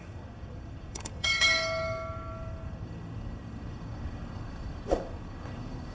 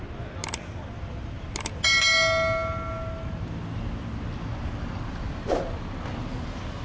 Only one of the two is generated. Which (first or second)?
first